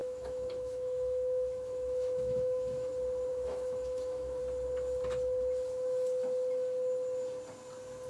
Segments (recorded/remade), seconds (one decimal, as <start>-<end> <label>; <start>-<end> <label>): 0.0-2.9 remade; 2.9-3.3 recorded; 3.3-4.4 remade; 4.4-8.1 recorded